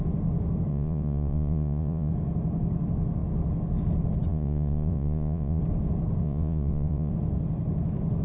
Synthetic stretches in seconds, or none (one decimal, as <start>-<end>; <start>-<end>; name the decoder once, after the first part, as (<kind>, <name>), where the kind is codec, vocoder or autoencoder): 0.7-2.1 (vocoder, Vocos); 4.3-5.6; 6.2-7.1